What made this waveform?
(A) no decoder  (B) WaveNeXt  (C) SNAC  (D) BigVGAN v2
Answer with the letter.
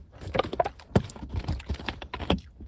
A